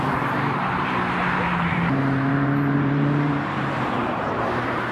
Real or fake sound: fake